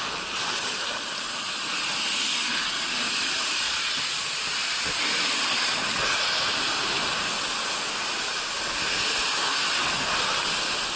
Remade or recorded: recorded